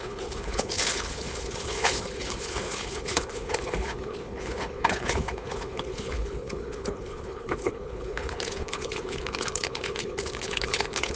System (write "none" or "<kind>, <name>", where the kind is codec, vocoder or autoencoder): codec, HILCodec